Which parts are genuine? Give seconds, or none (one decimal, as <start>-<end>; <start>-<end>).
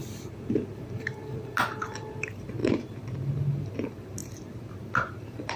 0.0-0.7